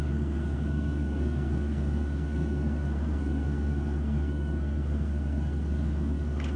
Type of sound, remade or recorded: remade